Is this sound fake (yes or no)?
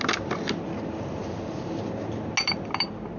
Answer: no